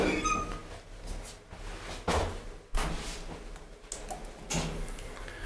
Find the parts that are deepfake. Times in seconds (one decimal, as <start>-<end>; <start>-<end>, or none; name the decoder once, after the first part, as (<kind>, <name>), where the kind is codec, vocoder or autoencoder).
none